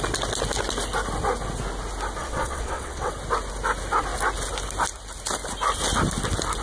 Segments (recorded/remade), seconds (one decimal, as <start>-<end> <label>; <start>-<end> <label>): 0.0-2.2 recorded; 2.2-3.1 remade; 3.1-6.6 recorded